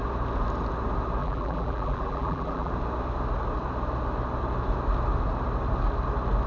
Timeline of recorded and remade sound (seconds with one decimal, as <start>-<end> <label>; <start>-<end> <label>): 0.0-1.2 recorded; 1.2-2.7 remade; 2.7-6.5 recorded